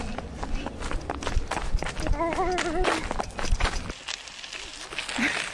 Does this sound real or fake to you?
real